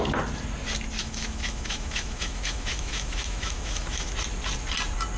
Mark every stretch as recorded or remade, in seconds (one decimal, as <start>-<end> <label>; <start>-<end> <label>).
0.0-1.0 recorded; 1.0-4.1 remade; 4.1-5.2 recorded